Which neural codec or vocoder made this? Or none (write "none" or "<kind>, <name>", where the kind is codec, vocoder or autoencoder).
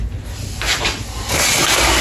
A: none